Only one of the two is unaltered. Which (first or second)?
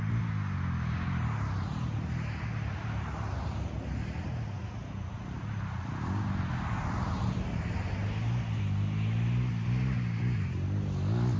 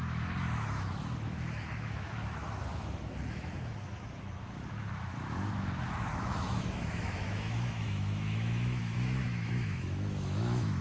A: first